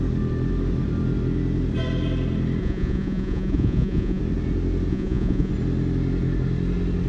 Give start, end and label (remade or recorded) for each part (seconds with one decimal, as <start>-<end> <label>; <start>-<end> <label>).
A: 0.0-2.6 recorded; 2.6-4.2 remade; 4.2-4.9 recorded; 4.9-5.5 remade; 5.5-7.1 recorded